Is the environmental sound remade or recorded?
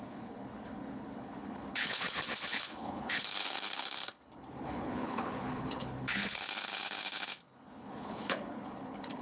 remade